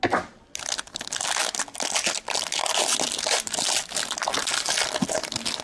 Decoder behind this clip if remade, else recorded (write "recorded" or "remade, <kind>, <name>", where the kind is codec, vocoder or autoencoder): recorded